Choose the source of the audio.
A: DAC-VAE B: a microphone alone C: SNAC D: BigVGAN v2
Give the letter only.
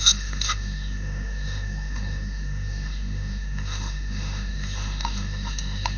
A